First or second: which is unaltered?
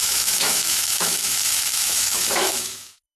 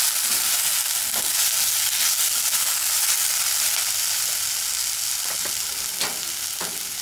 second